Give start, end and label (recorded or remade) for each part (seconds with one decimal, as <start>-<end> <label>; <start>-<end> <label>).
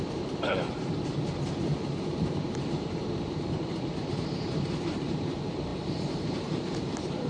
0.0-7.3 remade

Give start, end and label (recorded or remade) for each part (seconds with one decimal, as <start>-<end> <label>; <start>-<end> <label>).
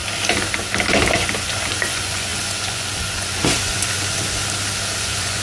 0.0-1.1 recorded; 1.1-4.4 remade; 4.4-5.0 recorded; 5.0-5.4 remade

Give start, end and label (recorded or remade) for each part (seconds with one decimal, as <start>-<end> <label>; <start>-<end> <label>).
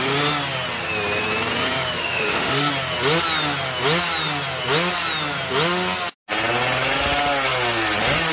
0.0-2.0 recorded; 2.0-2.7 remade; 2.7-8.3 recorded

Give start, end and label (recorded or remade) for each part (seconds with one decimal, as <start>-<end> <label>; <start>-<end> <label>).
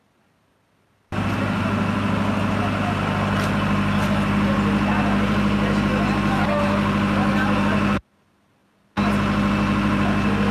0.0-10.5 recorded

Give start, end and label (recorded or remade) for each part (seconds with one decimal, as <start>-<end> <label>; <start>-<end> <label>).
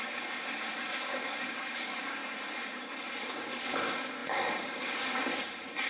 0.0-2.2 remade; 2.2-3.3 recorded; 3.3-5.3 remade; 5.3-5.9 recorded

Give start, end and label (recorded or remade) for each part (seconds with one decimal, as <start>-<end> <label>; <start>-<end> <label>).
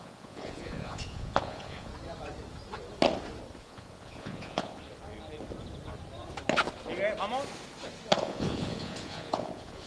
0.0-1.9 remade; 1.9-3.6 recorded; 3.6-4.8 remade; 4.8-8.2 recorded; 8.2-9.9 remade